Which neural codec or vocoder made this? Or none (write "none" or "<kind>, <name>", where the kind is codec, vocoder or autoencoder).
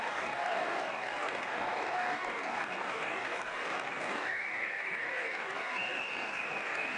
codec, DAC